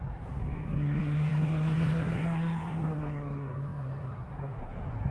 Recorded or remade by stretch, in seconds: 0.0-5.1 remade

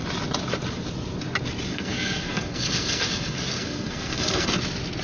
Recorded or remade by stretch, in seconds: 0.0-1.7 recorded; 1.7-4.5 remade; 4.5-5.0 recorded

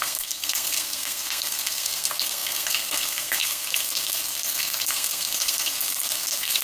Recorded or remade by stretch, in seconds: 0.0-6.6 remade

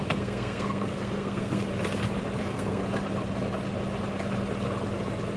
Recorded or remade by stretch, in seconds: 0.0-1.7 remade; 1.7-2.4 recorded; 2.4-2.8 remade; 2.8-5.4 recorded

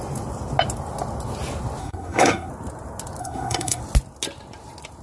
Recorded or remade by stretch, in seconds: 0.0-1.8 recorded; 1.8-2.5 remade; 2.5-3.2 recorded; 3.2-3.8 remade; 3.8-5.0 recorded

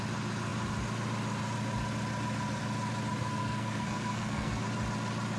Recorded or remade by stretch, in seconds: 0.0-3.2 recorded; 3.2-4.6 remade; 4.6-5.4 recorded

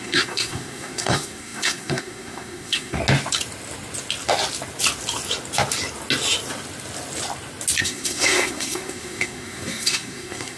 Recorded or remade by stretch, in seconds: 0.0-3.0 remade; 3.0-7.8 recorded; 7.8-10.6 remade

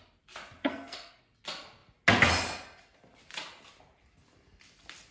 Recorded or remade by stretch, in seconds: 0.0-0.6 recorded; 0.6-1.2 remade; 1.2-5.1 recorded